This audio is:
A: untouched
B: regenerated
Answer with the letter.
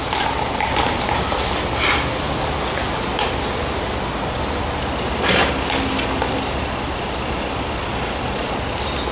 A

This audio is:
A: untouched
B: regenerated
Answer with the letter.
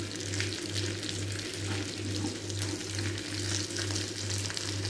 A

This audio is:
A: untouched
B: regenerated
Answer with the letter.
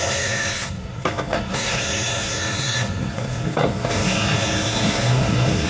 B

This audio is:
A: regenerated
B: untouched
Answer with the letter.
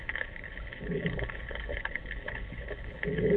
A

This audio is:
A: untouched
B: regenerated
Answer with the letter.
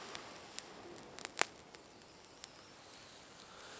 A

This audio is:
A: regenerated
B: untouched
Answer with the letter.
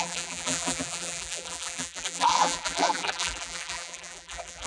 A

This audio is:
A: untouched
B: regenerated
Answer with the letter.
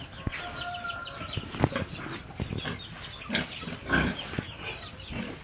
A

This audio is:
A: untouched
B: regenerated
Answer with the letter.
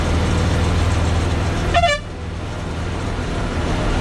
A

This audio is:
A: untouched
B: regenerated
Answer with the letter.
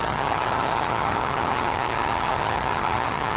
B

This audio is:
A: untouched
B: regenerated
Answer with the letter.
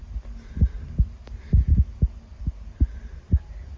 A